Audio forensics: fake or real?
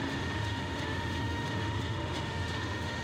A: fake